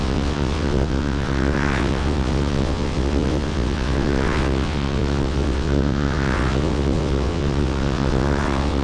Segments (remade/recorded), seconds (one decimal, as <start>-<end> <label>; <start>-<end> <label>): 0.0-8.8 remade